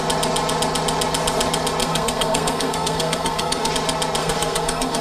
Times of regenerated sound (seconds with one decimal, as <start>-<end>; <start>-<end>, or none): 1.8-3.7; 4.2-5.0